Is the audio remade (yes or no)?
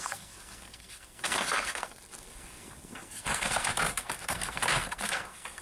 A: yes